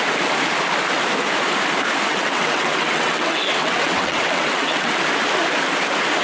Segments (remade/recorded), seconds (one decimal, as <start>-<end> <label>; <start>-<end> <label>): 0.0-2.1 recorded; 2.1-5.0 remade; 5.0-6.2 recorded